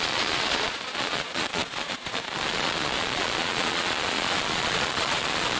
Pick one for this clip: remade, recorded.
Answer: remade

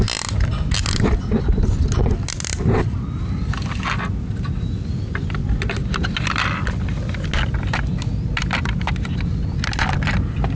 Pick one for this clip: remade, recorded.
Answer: recorded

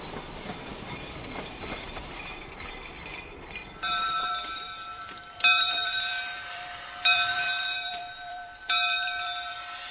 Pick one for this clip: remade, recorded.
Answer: remade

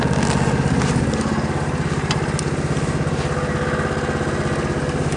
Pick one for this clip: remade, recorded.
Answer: recorded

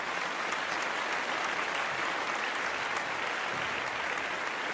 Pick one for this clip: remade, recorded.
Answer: recorded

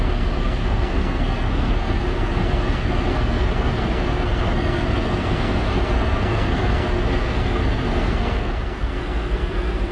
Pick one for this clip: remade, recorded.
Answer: remade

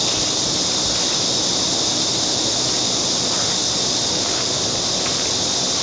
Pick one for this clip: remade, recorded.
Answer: recorded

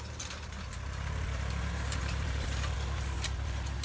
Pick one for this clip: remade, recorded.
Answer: recorded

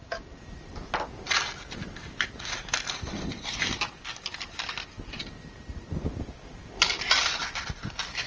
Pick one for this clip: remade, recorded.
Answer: recorded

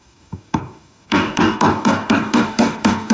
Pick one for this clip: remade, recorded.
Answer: remade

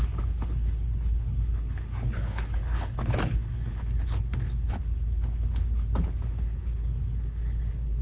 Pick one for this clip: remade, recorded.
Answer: remade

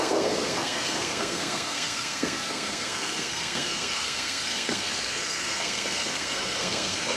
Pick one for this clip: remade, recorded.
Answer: remade